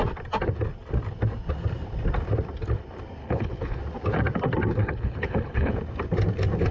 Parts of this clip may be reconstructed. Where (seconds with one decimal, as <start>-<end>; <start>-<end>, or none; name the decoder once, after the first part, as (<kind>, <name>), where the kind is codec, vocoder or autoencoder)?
3.2-3.8 (codec, HILCodec); 4.8-5.7